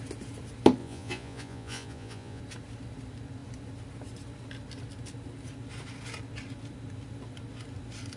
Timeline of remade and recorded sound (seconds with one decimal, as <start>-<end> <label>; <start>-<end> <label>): 0.0-0.8 recorded; 0.8-2.4 remade; 2.4-8.2 recorded